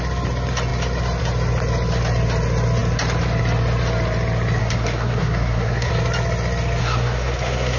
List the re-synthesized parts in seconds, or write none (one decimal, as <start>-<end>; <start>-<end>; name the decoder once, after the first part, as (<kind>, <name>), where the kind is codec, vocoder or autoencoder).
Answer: 4.6-5.9 (codec, SNAC); 6.8-7.8